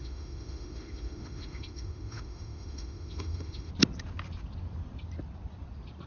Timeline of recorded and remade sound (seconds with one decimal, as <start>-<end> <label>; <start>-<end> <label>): 0.0-3.7 remade; 3.7-6.1 recorded